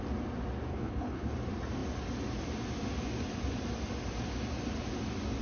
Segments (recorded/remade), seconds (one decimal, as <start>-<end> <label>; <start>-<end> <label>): 0.0-0.7 recorded; 0.7-1.3 remade; 1.3-5.4 recorded